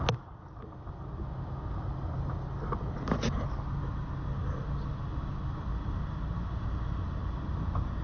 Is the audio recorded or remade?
recorded